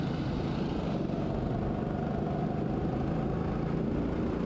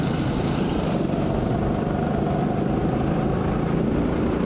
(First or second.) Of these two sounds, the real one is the first